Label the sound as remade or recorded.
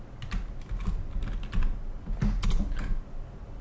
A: recorded